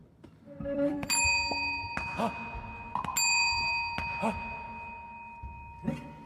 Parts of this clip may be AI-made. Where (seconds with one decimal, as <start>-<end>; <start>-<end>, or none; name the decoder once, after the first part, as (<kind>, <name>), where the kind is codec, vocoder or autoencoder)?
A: 0.0-1.1 (vocoder, BigVGAN v2)